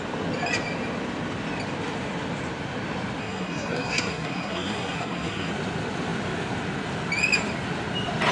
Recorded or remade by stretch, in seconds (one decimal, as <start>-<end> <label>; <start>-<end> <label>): 0.0-3.2 recorded; 3.2-5.5 remade; 5.5-8.3 recorded